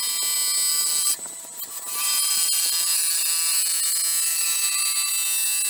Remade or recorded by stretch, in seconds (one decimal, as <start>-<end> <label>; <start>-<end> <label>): 0.0-0.7 recorded; 0.7-3.6 remade; 3.6-4.3 recorded; 4.3-5.1 remade; 5.1-5.7 recorded